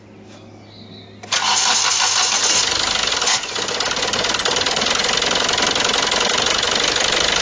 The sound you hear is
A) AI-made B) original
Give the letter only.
B